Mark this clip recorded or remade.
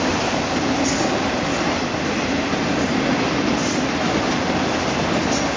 recorded